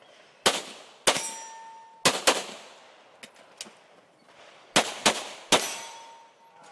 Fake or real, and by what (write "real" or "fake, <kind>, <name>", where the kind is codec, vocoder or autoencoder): real